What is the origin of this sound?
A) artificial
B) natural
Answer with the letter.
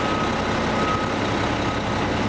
B